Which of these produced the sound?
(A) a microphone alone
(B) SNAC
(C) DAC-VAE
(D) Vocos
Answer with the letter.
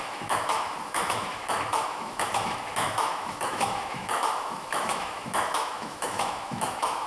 C